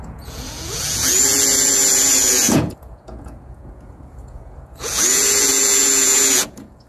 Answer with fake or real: fake